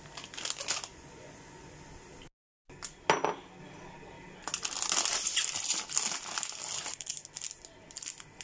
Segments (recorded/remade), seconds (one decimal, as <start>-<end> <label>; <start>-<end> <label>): 0.0-0.9 recorded; 0.9-1.7 remade; 1.7-8.4 recorded